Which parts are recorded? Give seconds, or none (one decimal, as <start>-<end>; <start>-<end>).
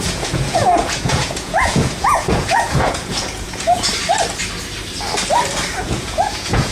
3.9-5.8